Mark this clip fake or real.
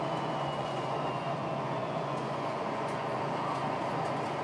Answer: fake